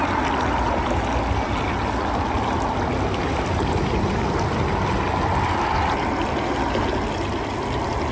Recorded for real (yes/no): yes